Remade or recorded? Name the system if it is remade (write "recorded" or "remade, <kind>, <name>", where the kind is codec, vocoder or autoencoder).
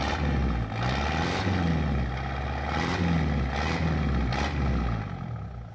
recorded